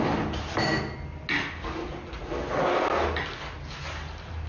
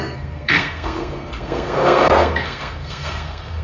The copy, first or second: second